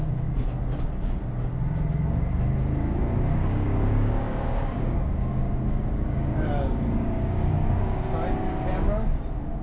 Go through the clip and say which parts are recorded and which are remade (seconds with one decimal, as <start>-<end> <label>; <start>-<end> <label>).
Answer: 0.0-3.0 recorded; 3.0-8.0 remade; 8.0-9.6 recorded